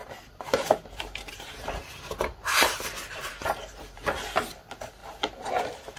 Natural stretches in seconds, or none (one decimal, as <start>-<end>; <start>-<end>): 1.7-2.5; 4.4-5.0; 5.5-6.0